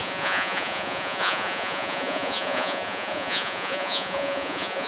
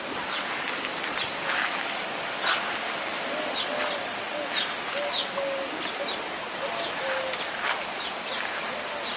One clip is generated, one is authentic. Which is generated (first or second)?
first